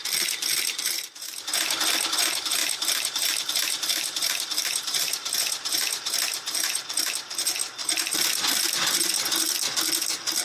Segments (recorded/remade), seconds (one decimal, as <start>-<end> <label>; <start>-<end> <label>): 0.0-2.6 recorded; 2.6-7.1 remade; 7.1-7.8 recorded; 7.8-8.7 remade; 8.7-10.4 recorded

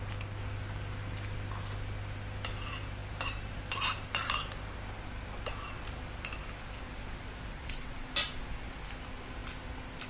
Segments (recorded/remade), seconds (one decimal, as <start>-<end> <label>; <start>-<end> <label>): 0.0-7.5 recorded; 7.5-8.1 remade; 8.1-10.1 recorded

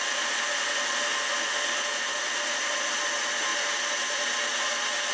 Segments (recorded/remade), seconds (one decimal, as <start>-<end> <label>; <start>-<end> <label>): 0.0-5.1 recorded

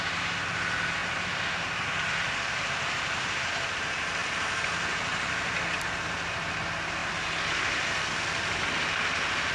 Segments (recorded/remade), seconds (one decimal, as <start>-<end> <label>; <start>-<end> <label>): 0.0-1.0 recorded; 1.0-3.8 remade; 3.8-9.5 recorded